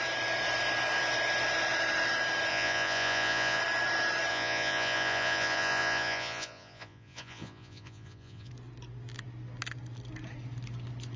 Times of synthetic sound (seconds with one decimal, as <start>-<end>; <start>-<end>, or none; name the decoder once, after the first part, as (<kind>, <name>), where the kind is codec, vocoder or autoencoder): 2.5-3.6 (vocoder, Vocos); 4.3-8.5